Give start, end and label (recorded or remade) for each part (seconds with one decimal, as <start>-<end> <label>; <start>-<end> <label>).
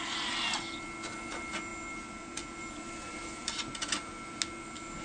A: 0.0-5.0 recorded